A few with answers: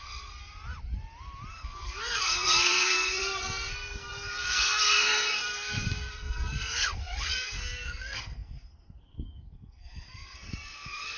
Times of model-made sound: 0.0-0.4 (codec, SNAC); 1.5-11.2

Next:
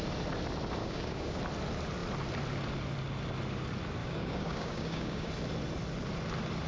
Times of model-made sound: 0.8-1.4 (codec, DAC); 4.0-5.3

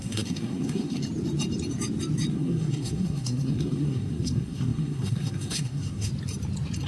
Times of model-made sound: 0.0-1.0 (codec, SNAC); 2.3-6.1

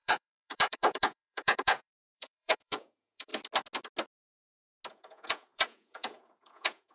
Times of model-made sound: 0.0-3.3 (vocoder, Vocos); 4.9-6.9

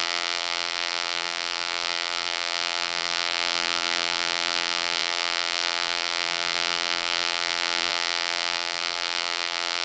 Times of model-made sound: 0.0-9.8 (vocoder, BigVGAN v2)

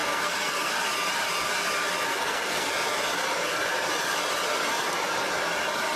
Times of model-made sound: 0.0-0.7 (codec, SNAC); 2.1-2.7